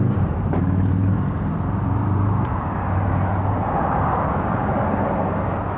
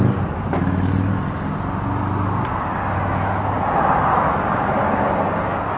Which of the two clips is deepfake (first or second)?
first